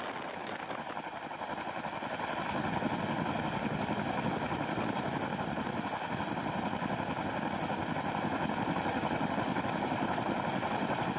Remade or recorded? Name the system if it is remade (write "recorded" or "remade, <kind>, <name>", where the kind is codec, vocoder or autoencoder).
recorded